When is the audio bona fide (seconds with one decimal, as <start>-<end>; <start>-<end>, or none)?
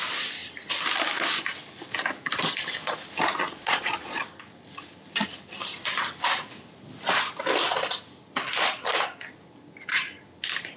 0.0-3.4; 4.2-10.8